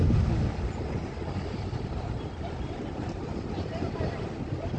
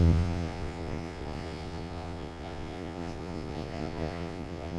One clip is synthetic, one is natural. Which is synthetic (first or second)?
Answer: second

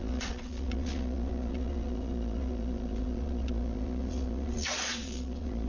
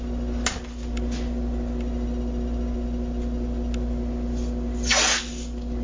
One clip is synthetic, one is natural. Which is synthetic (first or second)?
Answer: first